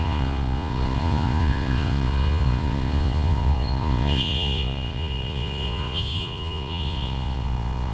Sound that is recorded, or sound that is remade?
remade